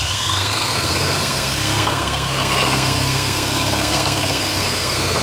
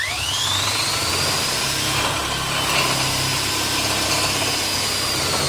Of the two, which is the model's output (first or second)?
first